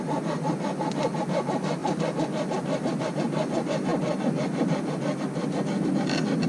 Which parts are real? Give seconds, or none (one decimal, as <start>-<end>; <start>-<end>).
0.0-6.5